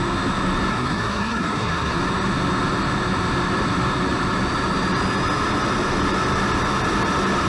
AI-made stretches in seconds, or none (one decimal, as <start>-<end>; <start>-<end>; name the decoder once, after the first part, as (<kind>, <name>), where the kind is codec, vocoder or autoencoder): 0.7-2.0 (codec, SNAC)